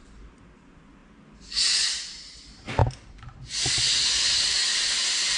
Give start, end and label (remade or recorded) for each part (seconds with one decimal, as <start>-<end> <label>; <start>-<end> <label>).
0.0-5.4 recorded

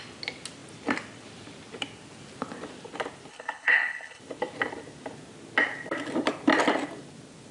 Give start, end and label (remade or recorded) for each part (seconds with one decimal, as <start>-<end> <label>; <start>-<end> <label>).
0.0-3.3 recorded; 3.3-4.2 remade; 4.2-7.5 recorded

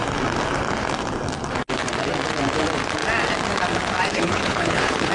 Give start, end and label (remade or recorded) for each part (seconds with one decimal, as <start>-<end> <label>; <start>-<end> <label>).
0.0-4.1 recorded; 4.1-5.1 remade